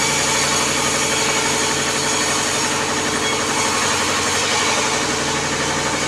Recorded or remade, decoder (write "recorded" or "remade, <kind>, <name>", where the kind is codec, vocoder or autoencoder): recorded